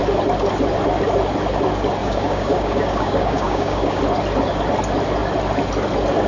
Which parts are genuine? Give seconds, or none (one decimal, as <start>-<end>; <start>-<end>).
0.0-2.0; 4.0-6.3